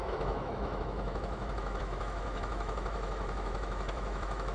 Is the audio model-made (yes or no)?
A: yes